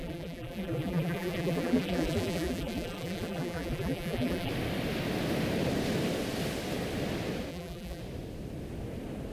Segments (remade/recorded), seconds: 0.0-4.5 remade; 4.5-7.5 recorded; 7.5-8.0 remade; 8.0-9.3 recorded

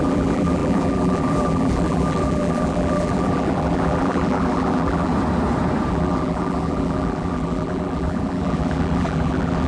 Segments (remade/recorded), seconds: 0.0-5.1 remade; 5.1-5.9 recorded; 5.9-9.7 remade

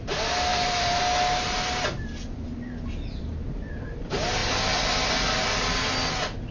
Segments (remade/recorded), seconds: 0.0-0.5 recorded; 0.5-1.0 remade; 1.0-6.5 recorded